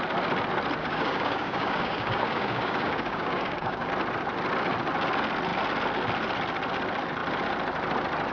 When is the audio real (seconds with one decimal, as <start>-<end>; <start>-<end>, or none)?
0.0-0.8; 3.9-8.3